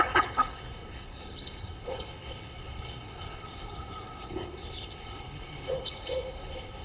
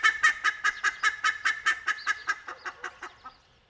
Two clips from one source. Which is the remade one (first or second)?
first